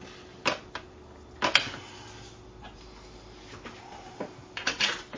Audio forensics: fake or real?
real